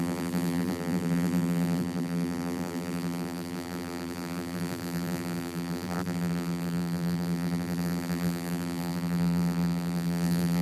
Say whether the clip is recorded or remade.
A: remade